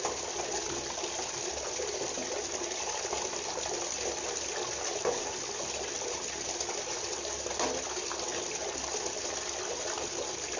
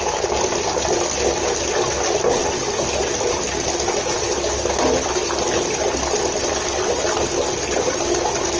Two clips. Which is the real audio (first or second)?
second